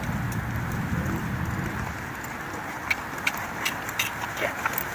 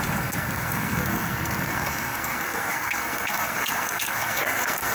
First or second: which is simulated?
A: second